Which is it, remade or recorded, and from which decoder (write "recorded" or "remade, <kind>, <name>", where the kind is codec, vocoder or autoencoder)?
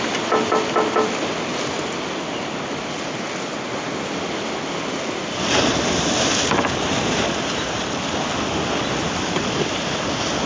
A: recorded